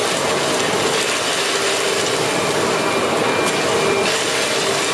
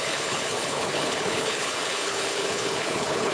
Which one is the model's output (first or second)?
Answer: second